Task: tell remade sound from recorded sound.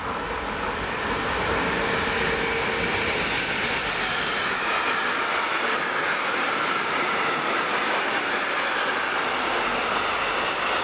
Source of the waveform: recorded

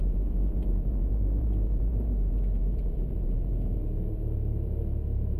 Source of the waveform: remade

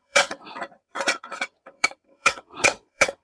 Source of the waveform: remade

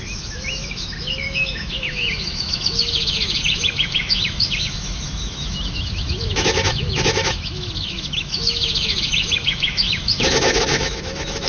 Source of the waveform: remade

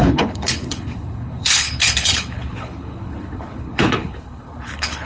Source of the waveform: remade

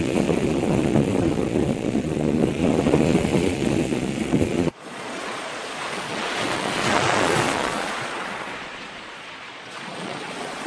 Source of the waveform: remade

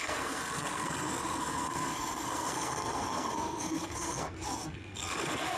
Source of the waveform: remade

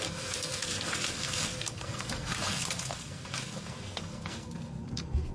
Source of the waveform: remade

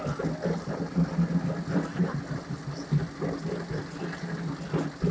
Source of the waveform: recorded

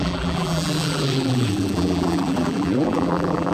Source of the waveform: remade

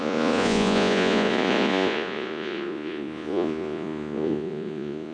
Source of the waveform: remade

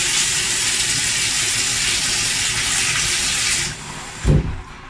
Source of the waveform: recorded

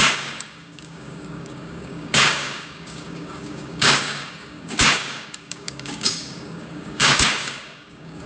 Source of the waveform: remade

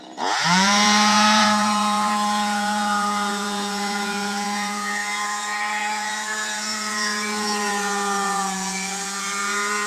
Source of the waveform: remade